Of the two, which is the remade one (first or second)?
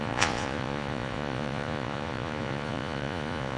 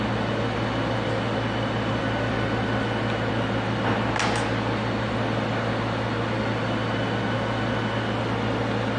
first